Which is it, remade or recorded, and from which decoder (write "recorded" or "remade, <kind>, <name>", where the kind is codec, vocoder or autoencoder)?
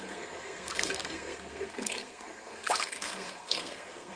remade, codec, SNAC